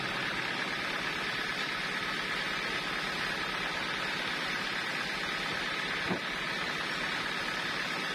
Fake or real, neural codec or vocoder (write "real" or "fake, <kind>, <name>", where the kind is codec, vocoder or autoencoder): real